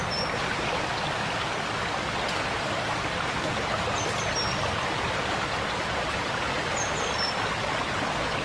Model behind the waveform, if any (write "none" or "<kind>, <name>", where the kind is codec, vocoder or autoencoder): none